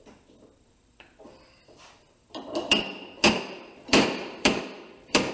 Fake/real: fake